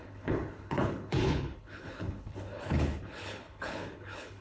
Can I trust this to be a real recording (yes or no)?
no